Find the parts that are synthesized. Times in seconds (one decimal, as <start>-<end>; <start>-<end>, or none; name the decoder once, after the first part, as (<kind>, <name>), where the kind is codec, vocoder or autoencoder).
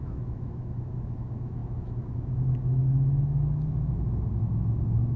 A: 0.0-5.2 (autoencoder, DAC-VAE)